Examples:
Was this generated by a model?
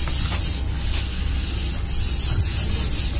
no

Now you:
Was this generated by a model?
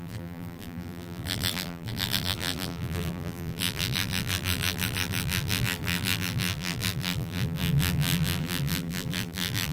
yes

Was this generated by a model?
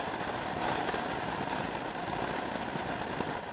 no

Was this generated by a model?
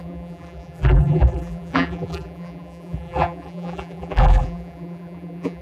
yes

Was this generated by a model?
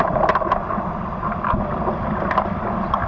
yes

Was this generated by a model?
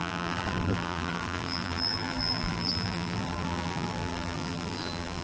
yes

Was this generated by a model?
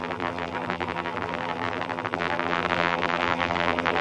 yes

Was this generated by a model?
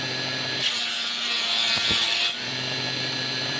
yes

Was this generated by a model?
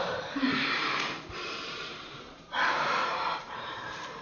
yes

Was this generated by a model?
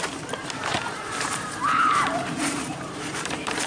yes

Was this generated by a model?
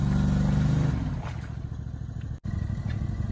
no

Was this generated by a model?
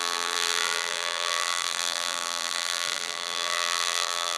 yes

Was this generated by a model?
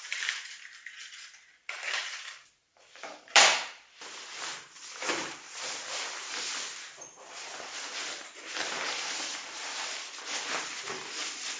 yes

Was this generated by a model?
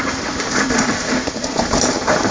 yes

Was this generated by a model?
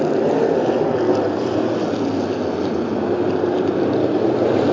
no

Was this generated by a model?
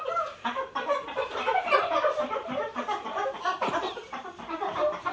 yes